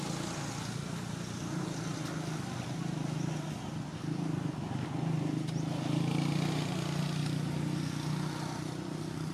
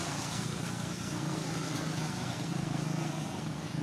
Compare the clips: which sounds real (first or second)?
first